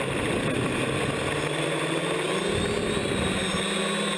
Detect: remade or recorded recorded